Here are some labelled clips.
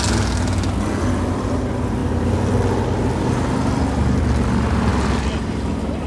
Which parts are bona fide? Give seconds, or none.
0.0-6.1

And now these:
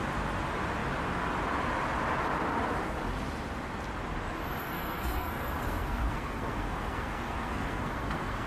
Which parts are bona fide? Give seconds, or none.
0.0-4.6

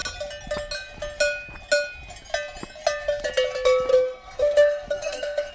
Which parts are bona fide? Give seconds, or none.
0.0-3.9

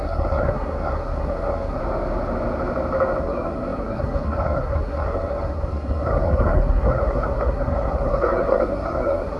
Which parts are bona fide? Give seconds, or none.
1.8-3.2

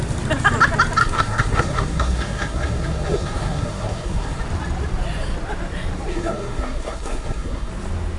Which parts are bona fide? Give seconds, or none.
0.0-1.0; 4.4-6.1; 7.7-8.2

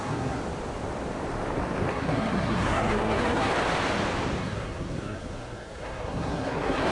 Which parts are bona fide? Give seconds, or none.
0.4-1.9; 3.5-4.4

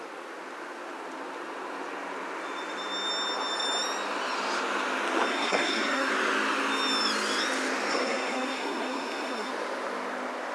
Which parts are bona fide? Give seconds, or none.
0.0-5.3; 6.1-7.9; 9.5-10.5